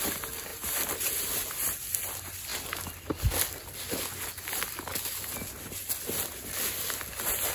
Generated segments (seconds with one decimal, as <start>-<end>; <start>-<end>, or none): 0.5-2.0

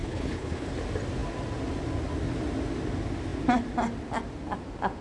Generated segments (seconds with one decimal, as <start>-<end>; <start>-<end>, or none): 0.0-0.7

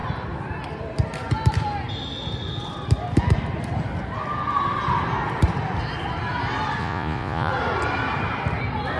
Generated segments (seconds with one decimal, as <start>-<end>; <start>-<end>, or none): 6.8-7.5

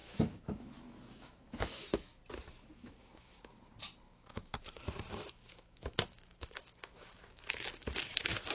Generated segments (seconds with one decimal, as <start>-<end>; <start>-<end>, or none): 0.0-2.2; 2.7-3.5; 4.1-8.5

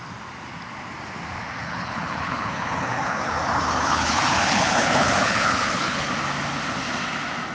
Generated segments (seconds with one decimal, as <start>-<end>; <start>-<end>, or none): 1.6-6.1

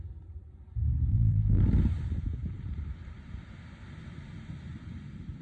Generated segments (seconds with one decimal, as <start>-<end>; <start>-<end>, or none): 1.1-1.6